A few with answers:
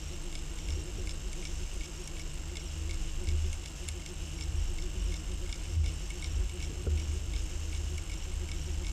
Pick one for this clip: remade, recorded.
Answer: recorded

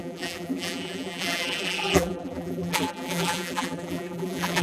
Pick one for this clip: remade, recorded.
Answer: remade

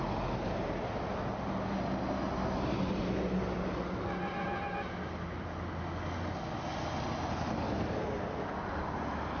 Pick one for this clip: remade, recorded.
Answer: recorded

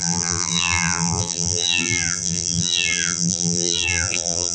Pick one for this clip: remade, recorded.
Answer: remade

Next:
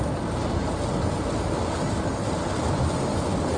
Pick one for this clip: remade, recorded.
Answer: recorded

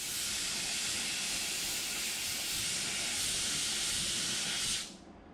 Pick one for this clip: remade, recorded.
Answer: recorded